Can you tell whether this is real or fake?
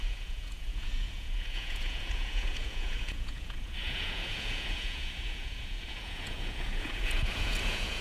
fake